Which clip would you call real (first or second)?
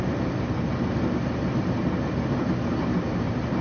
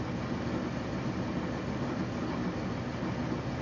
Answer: second